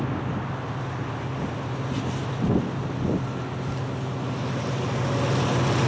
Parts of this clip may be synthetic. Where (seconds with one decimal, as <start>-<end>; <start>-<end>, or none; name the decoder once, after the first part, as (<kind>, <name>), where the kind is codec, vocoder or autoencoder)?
none

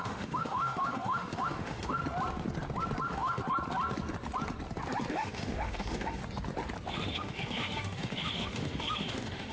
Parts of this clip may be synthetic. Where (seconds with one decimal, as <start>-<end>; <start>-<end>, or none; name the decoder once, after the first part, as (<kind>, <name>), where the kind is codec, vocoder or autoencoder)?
0.0-2.0 (autoencoder, DAC-VAE); 3.0-3.4; 5.1-6.2; 6.9-9.5